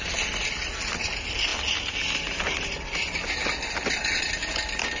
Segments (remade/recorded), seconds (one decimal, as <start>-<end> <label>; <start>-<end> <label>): 0.0-5.0 recorded